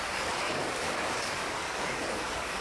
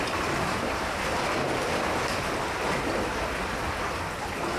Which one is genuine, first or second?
second